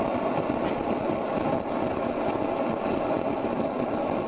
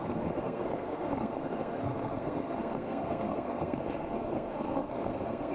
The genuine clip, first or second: first